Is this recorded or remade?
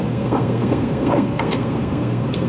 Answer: remade